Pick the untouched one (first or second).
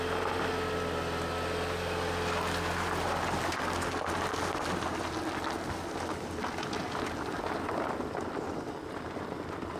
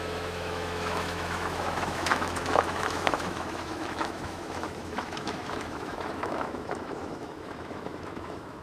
first